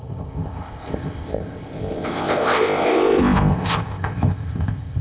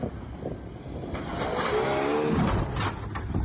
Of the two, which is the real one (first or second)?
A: second